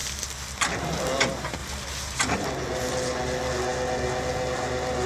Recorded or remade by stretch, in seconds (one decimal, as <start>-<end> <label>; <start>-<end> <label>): 0.0-5.1 recorded